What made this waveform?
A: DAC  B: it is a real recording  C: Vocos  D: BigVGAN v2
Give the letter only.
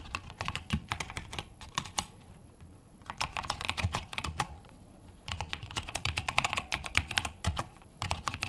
C